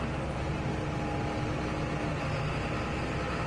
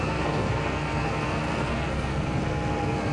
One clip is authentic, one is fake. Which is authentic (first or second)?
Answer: first